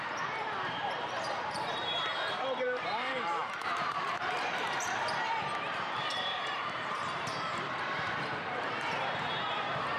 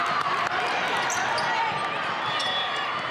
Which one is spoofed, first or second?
first